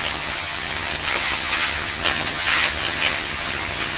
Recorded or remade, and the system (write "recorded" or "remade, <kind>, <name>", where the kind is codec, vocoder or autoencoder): remade, vocoder, HiFi-GAN